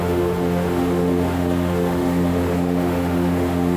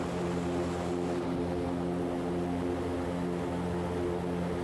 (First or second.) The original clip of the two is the second